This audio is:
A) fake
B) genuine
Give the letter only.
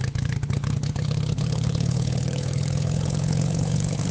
A